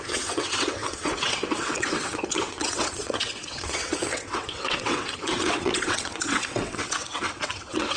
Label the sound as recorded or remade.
remade